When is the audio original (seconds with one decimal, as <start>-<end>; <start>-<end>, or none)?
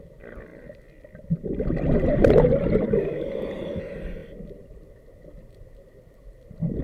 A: 0.0-6.8